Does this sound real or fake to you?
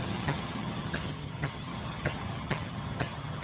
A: fake